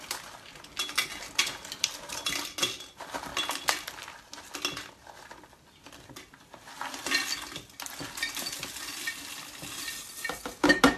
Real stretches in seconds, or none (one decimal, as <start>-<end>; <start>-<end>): 0.0-11.0